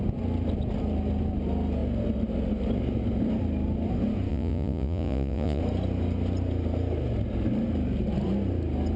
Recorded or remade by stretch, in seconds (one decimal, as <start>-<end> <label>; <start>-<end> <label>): 0.0-4.3 recorded; 4.3-5.6 remade; 5.6-9.0 recorded